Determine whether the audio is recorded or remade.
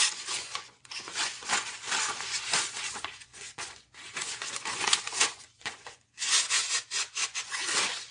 remade